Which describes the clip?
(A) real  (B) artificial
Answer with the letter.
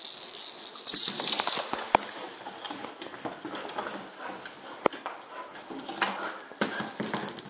A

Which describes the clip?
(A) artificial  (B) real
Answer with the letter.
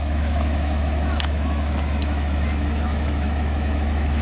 A